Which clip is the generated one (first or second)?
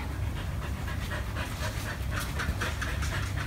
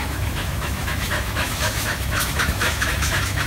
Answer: second